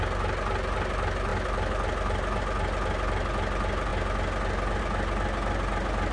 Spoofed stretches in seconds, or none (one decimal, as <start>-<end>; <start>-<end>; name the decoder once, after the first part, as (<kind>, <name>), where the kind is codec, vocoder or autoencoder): none